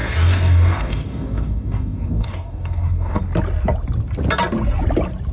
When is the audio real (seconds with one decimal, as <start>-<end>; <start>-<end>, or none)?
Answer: 3.2-5.3